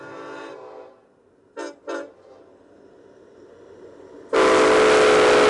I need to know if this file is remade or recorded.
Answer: recorded